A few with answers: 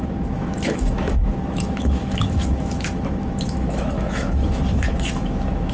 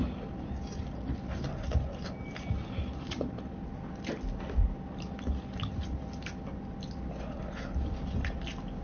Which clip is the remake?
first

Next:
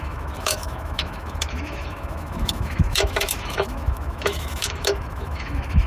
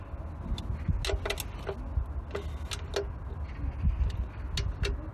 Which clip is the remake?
first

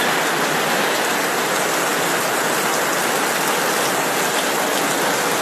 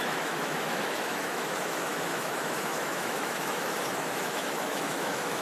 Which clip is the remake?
second